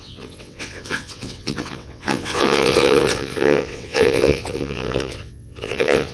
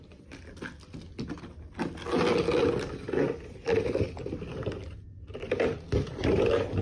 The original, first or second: second